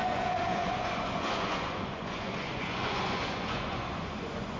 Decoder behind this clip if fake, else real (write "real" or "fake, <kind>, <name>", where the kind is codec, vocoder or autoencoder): fake, vocoder, Vocos